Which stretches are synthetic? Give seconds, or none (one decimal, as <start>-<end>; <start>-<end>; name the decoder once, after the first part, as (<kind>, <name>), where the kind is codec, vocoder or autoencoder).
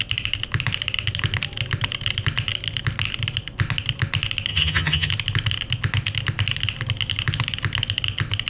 4.5-5.1 (vocoder, HiFi-GAN)